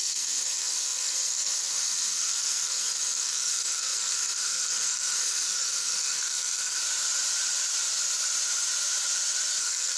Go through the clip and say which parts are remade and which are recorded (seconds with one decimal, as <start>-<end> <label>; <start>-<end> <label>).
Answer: 0.0-6.8 remade; 6.8-9.6 recorded; 9.6-10.0 remade